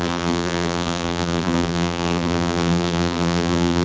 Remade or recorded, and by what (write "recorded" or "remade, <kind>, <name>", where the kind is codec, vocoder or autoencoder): remade, vocoder, BigVGAN v2